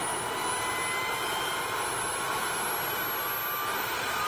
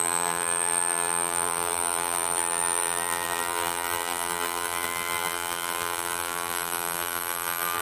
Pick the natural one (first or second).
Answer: first